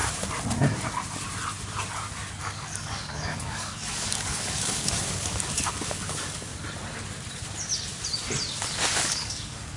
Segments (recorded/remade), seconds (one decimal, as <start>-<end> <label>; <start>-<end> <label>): 0.0-2.4 recorded; 2.4-6.5 remade; 6.5-8.7 recorded; 8.7-9.8 remade